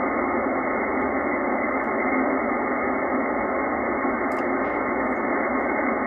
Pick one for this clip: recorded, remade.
recorded